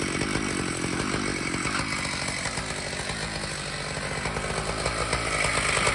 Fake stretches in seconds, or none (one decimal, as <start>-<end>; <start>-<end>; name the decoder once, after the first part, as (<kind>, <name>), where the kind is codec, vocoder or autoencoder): none